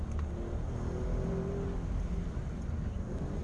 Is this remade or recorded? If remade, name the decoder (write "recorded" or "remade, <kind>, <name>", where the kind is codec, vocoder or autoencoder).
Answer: recorded